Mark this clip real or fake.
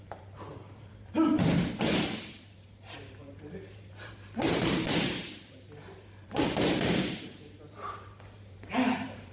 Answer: fake